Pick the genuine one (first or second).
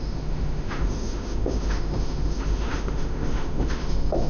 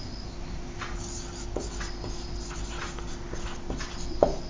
second